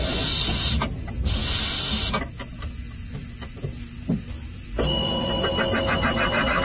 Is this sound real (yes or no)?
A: yes